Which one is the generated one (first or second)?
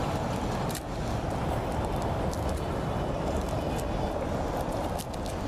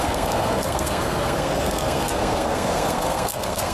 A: second